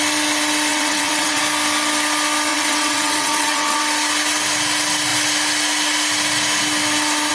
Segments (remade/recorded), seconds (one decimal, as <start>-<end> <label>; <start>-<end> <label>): 0.0-0.7 recorded; 0.7-1.4 remade; 1.4-2.5 recorded; 2.5-3.8 remade; 3.8-7.3 recorded